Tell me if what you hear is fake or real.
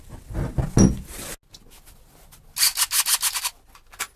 real